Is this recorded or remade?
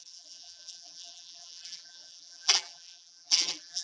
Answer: remade